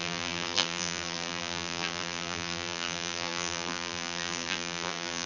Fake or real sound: fake